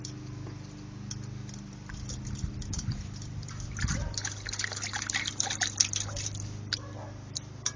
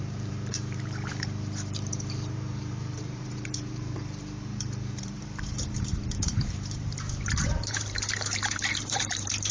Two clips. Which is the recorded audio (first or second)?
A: first